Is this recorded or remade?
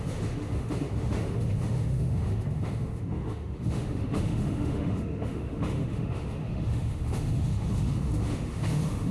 remade